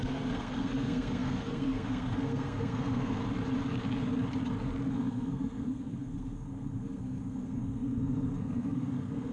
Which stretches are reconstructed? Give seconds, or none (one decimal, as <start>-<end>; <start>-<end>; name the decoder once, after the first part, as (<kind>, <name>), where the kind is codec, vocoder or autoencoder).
0.0-3.2 (codec, SNAC); 4.9-9.3